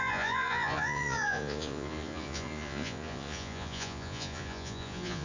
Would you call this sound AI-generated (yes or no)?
yes